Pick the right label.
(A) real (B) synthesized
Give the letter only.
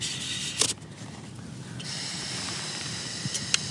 B